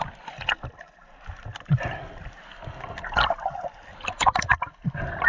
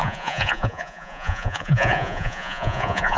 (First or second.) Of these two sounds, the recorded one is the first